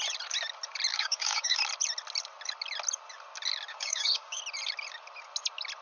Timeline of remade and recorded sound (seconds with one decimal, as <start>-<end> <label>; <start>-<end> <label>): 0.0-0.9 recorded; 0.9-1.6 remade; 1.6-3.7 recorded; 3.7-4.4 remade; 4.4-5.8 recorded